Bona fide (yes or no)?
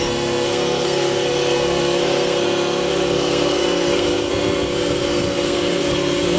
no